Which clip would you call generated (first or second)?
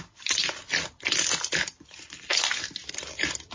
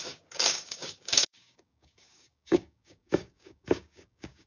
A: second